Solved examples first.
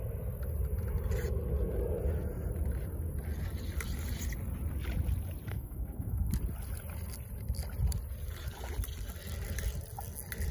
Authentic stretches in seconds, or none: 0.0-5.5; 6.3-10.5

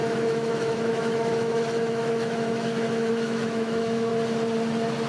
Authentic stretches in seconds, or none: 4.1-5.1

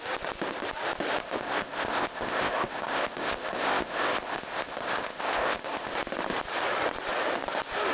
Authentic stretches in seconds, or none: 0.0-1.2; 5.9-7.9

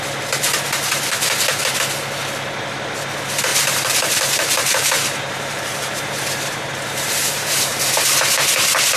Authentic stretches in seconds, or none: 0.0-3.5; 7.9-9.0